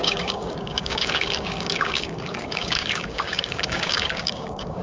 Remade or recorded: remade